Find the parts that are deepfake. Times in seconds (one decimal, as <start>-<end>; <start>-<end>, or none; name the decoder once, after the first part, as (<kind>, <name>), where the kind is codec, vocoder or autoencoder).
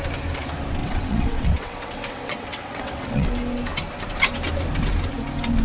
0.8-3.3 (vocoder, WaveNeXt)